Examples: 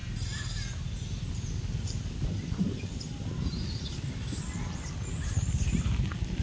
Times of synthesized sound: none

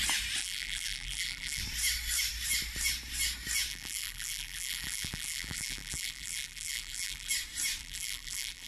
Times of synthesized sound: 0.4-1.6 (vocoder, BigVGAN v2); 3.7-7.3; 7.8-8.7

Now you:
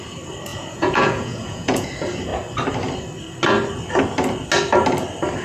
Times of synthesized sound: 0.5-1.9 (vocoder, Vocos)